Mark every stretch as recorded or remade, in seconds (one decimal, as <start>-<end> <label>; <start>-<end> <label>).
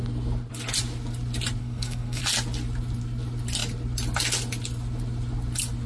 0.0-1.6 recorded; 1.6-2.2 remade; 2.2-5.9 recorded